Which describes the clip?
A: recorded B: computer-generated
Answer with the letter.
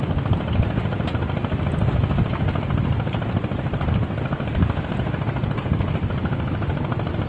A